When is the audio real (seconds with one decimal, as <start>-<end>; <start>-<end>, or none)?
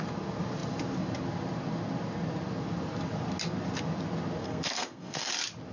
0.0-4.4; 5.3-5.7